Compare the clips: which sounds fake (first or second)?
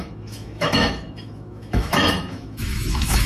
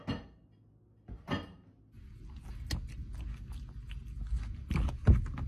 first